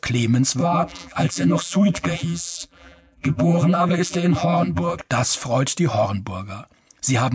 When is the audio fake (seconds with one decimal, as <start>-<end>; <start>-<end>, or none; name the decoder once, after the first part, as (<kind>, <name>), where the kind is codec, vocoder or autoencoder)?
0.6-5.0 (vocoder, BigVGAN v2)